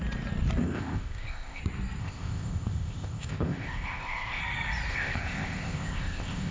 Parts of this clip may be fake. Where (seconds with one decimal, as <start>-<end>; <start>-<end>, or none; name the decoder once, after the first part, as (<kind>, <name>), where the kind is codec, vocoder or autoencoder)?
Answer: 0.6-1.6 (codec, ZipCodec); 2.0-4.4; 4.9-6.5